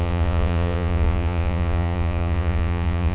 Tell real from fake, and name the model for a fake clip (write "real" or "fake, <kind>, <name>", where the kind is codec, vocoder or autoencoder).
fake, vocoder, Vocos